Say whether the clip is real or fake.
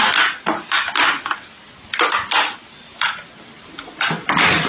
real